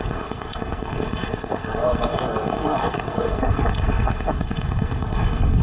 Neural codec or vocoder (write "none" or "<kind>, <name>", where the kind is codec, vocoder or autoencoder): codec, SNAC